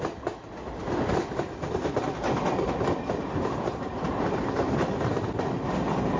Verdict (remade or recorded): recorded